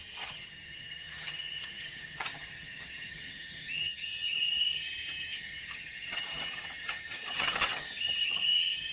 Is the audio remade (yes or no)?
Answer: yes